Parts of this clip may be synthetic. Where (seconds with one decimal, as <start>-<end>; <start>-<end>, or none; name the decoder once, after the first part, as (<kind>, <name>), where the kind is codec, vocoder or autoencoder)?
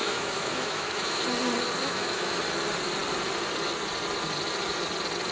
0.0-1.2 (autoencoder, DAC-VAE); 1.8-2.4